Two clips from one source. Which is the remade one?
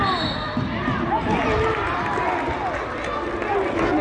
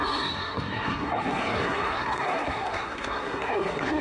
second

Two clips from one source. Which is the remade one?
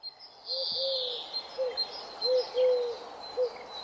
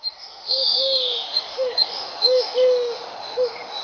second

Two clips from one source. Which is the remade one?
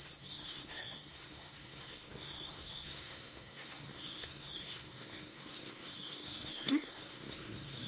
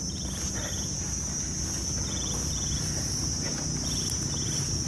first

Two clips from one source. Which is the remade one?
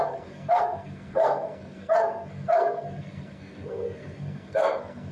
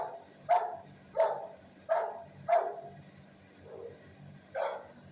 first